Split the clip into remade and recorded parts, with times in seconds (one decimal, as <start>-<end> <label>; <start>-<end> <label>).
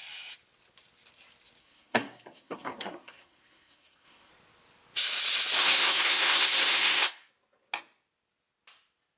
0.0-1.6 recorded; 1.6-4.3 remade; 4.3-5.6 recorded; 5.6-7.3 remade; 7.3-9.2 recorded